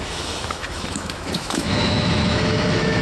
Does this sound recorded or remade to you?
remade